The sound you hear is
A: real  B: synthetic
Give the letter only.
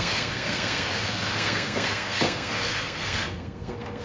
B